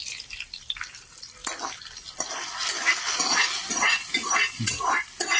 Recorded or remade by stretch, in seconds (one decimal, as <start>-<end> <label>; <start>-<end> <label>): 0.0-5.4 recorded